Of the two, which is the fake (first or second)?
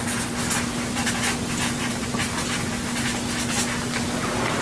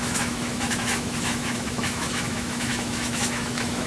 second